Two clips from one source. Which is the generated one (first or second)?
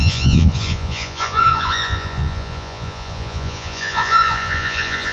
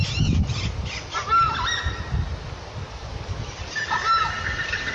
first